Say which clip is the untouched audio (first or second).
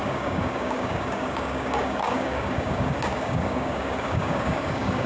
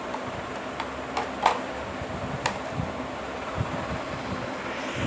second